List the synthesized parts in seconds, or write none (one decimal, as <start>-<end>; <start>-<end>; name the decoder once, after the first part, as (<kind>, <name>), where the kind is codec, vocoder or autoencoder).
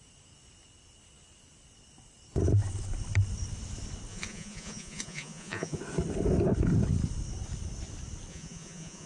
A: 4.1-5.8 (vocoder, Vocos); 8.3-9.1